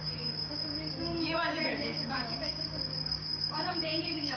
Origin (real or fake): fake